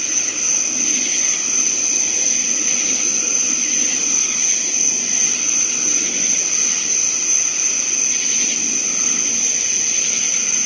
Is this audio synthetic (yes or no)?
no